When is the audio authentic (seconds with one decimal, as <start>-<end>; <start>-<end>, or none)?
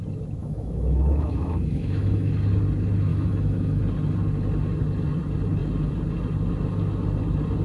0.0-0.4; 2.3-3.1; 3.8-7.6